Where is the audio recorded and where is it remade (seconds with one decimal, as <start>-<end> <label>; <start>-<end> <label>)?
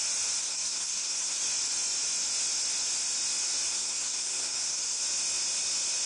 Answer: 0.0-0.4 recorded; 0.4-1.4 remade; 1.4-3.7 recorded; 3.7-5.0 remade; 5.0-6.1 recorded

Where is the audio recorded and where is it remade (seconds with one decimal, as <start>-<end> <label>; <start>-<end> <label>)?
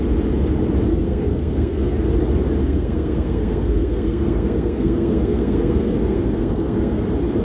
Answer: 0.0-0.9 recorded; 0.9-1.8 remade; 1.8-2.6 recorded; 2.6-7.0 remade; 7.0-7.4 recorded